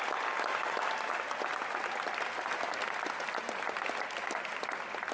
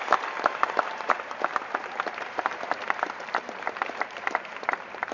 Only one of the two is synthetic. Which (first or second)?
second